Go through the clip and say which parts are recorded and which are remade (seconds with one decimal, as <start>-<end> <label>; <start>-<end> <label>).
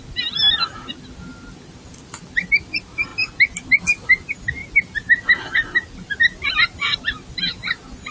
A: 0.0-8.1 recorded